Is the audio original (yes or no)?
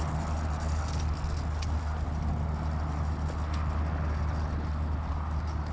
yes